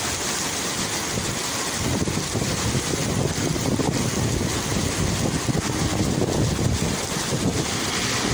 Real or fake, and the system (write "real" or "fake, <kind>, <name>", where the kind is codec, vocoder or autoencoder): real